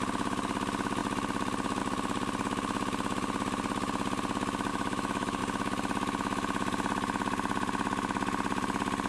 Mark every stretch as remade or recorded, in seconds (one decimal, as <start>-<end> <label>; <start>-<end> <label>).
0.0-4.7 recorded; 4.7-5.4 remade; 5.4-9.1 recorded